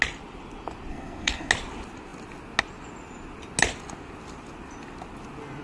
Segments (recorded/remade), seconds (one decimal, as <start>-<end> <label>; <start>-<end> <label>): 0.0-0.9 recorded; 0.9-1.5 remade; 1.5-5.6 recorded